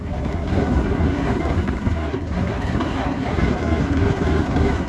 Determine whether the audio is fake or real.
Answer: fake